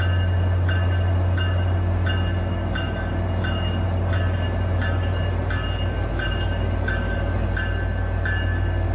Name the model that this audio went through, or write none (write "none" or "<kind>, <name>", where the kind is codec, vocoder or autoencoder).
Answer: none